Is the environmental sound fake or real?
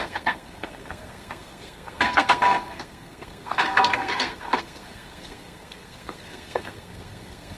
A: fake